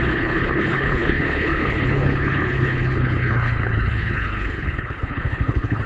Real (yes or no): no